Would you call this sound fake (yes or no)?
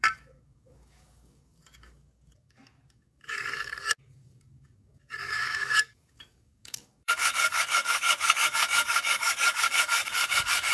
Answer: yes